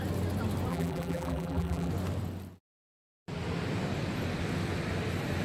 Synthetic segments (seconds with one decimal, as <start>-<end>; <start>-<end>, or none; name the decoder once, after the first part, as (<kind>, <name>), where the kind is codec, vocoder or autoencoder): 0.7-1.9 (vocoder, BigVGAN v2)